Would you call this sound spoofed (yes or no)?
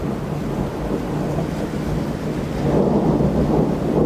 no